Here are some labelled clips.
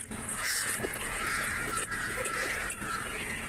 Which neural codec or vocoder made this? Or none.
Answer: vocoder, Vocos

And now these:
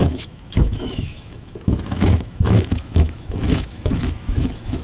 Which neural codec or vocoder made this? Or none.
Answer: autoencoder, DAC-VAE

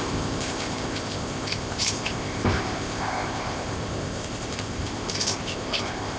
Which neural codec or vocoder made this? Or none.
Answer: codec, ZipCodec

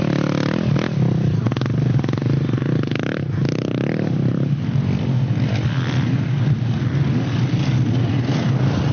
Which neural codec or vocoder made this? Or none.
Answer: none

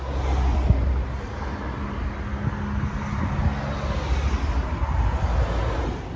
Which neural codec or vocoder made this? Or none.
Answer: none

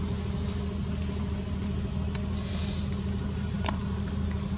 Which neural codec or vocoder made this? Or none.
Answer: none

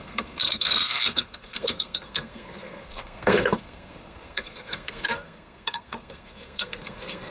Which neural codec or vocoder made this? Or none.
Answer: codec, SNAC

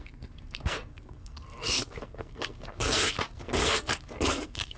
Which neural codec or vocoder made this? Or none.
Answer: codec, SNAC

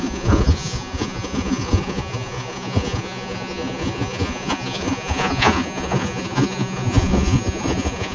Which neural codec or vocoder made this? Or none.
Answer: vocoder, Vocos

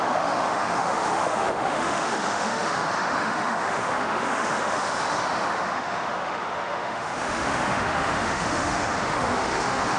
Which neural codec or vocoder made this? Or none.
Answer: autoencoder, DAC-VAE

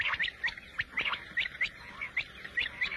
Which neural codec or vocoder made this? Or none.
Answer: none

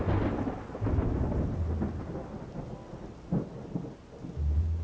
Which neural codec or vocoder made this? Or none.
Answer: none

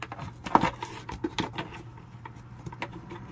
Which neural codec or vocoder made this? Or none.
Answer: none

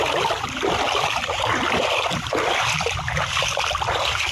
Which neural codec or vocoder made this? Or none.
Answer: vocoder, BigVGAN v2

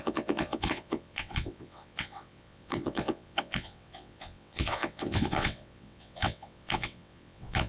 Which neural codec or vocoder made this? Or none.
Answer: vocoder, WaveNeXt